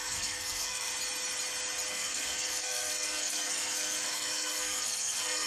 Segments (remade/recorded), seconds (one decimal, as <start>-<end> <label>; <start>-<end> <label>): 0.0-0.9 remade; 0.9-1.9 recorded; 1.9-5.5 remade